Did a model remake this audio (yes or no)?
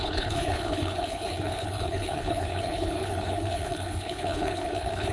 yes